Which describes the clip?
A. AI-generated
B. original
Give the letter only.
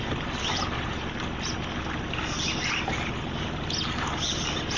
B